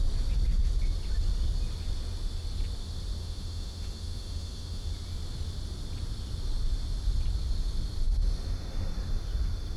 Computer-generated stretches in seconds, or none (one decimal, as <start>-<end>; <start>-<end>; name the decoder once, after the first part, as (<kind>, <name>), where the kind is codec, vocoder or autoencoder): 3.2-4.9 (autoencoder, DAC-VAE)